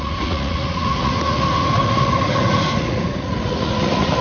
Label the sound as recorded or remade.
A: remade